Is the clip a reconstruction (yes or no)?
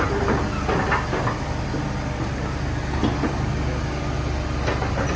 no